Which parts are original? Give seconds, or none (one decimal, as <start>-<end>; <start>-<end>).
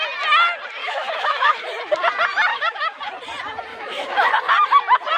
0.0-0.8; 1.8-2.5; 3.0-3.7; 4.3-5.2